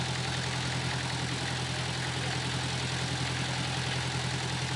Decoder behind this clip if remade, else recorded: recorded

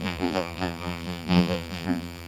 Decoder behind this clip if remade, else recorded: remade, vocoder, BigVGAN v2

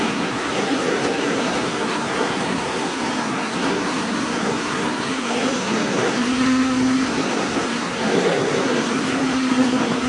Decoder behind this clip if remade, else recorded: remade, codec, SNAC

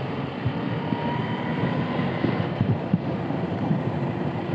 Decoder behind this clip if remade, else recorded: remade, vocoder, BigVGAN v2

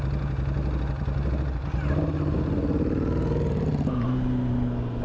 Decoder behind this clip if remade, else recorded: recorded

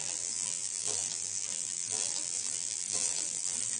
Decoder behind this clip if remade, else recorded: remade, vocoder, BigVGAN v2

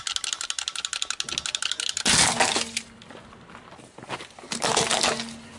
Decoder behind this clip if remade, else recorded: recorded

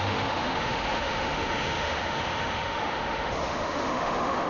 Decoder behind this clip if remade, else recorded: remade, autoencoder, DAC-VAE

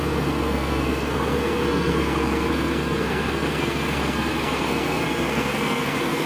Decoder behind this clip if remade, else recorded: remade, codec, SNAC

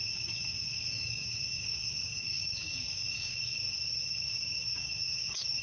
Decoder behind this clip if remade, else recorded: remade, codec, DAC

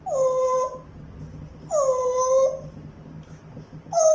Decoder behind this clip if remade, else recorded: recorded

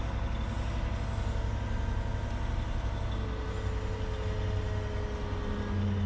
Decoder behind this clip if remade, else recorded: recorded